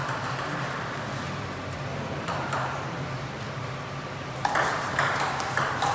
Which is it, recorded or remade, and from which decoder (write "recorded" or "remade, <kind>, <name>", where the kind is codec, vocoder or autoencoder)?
remade, vocoder, BigVGAN v2